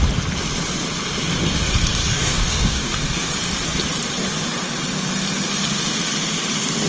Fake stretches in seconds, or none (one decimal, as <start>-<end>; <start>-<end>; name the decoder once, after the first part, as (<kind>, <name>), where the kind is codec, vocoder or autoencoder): 2.0-3.3 (codec, DAC)